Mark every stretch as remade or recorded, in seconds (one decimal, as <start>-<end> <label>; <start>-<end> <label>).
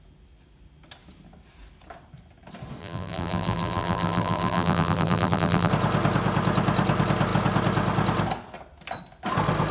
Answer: 0.0-2.8 recorded; 2.8-5.7 remade; 5.7-9.7 recorded